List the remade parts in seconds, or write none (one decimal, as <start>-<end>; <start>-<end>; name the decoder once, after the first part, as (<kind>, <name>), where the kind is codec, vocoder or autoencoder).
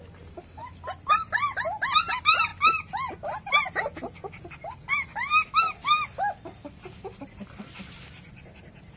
none